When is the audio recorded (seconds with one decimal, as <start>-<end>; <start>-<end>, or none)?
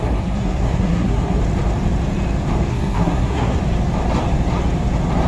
1.4-2.7; 3.6-5.3